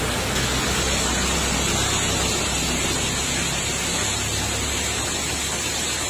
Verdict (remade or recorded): recorded